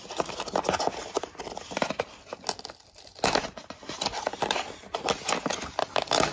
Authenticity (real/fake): real